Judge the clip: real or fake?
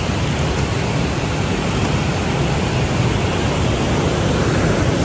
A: real